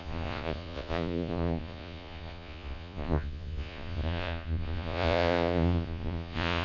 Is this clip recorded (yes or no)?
no